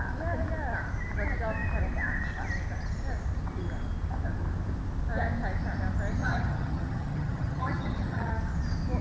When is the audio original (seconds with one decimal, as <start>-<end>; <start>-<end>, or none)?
0.0-6.2; 8.3-9.0